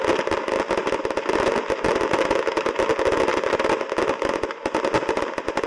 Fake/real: real